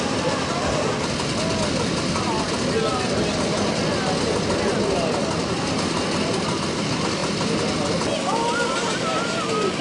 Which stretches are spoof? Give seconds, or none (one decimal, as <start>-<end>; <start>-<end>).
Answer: none